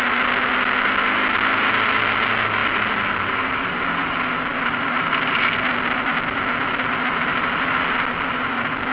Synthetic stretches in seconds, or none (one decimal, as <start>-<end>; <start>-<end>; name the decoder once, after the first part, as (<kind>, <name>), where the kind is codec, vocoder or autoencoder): none